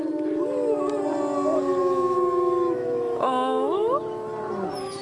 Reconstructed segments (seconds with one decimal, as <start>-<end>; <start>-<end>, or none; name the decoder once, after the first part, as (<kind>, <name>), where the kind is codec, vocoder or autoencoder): 1.8-4.0 (autoencoder, DAC-VAE)